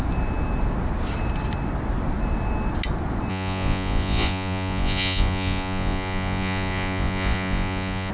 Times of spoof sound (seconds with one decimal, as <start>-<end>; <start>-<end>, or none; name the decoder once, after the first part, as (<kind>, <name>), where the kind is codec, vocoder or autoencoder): 3.3-8.1 (vocoder, Vocos)